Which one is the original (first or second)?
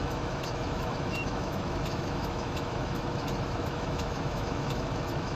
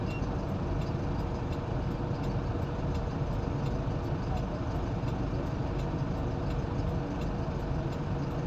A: second